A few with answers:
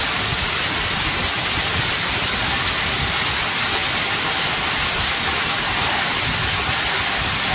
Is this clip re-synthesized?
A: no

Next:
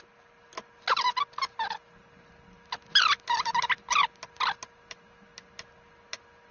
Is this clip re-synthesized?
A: no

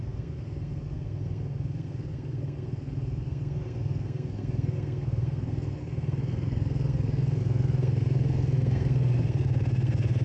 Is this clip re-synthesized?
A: yes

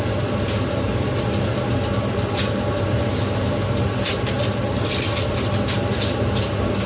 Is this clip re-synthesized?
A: no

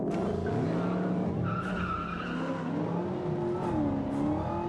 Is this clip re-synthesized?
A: no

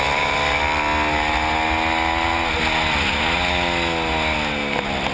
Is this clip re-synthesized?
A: no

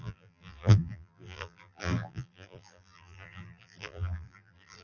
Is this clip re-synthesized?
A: yes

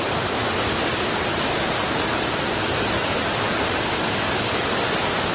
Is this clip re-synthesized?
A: no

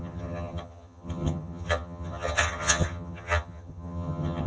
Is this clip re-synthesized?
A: yes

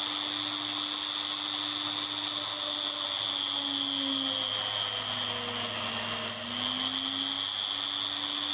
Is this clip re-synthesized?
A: no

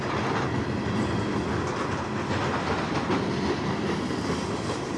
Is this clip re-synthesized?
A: no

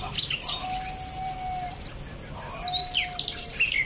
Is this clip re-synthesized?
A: no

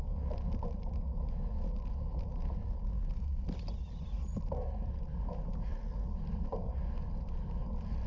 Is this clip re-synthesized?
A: no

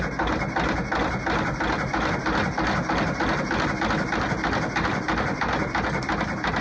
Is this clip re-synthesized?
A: no